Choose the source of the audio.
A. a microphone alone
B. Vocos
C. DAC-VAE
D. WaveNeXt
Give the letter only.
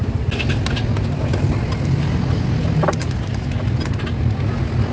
A